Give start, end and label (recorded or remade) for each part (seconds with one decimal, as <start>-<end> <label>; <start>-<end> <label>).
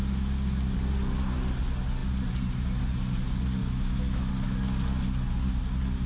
0.0-3.6 recorded; 3.6-4.3 remade; 4.3-6.1 recorded